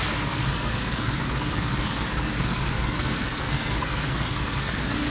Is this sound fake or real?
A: fake